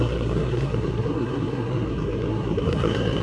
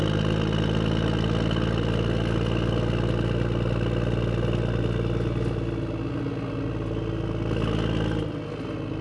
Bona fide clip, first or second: second